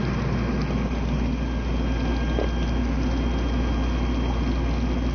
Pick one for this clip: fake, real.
real